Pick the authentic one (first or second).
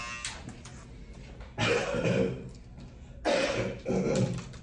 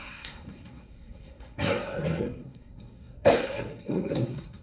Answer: first